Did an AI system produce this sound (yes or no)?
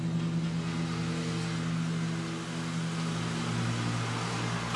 no